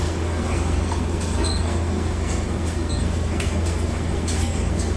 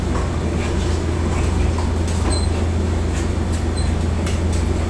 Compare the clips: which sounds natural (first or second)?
second